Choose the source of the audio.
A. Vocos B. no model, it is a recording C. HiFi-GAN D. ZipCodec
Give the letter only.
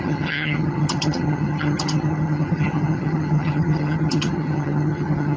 C